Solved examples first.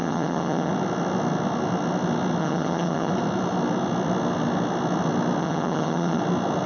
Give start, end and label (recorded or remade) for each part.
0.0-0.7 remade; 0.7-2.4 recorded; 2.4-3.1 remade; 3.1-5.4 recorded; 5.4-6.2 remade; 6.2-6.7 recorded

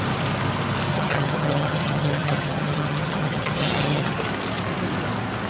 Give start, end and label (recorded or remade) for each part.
0.0-0.9 recorded; 0.9-4.2 remade; 4.2-5.5 recorded

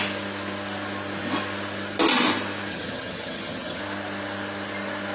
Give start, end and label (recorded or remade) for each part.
0.0-2.7 recorded; 2.7-3.8 remade; 3.8-5.1 recorded

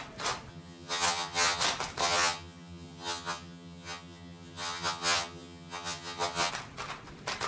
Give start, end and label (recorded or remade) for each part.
0.0-0.5 recorded; 0.5-1.6 remade; 1.6-2.0 recorded; 2.0-6.5 remade; 6.5-7.5 recorded

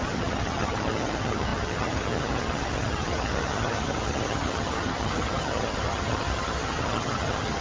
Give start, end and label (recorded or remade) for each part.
0.0-7.6 remade

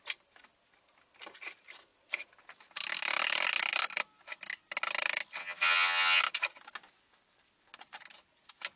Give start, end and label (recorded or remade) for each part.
0.0-5.4 recorded; 5.4-6.2 remade; 6.2-8.8 recorded

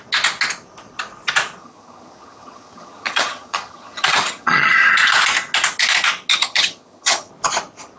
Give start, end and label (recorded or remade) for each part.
0.0-1.6 recorded; 1.6-4.9 remade; 4.9-6.3 recorded; 6.3-7.3 remade; 7.3-8.0 recorded